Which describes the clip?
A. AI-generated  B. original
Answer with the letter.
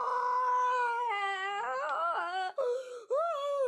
B